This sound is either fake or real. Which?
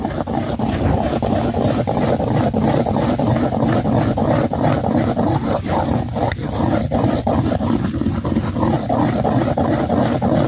real